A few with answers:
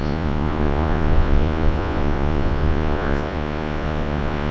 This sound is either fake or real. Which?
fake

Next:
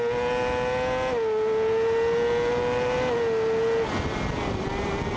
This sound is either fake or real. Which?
real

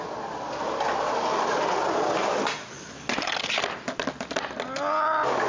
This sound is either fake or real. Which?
real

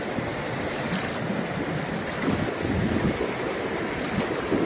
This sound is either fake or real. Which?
real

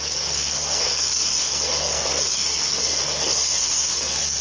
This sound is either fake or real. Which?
fake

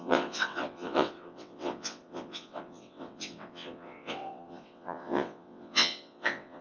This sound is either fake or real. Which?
fake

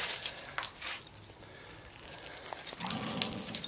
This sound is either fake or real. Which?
real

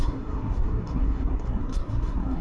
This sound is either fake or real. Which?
fake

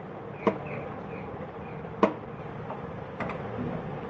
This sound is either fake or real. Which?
real